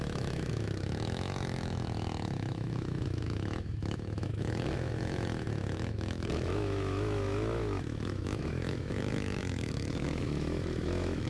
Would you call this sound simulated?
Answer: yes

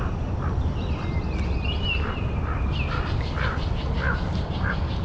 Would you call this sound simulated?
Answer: no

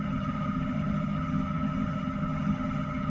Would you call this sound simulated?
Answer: yes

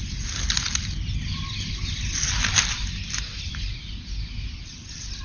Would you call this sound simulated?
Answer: no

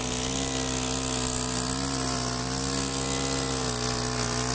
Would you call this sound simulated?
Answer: no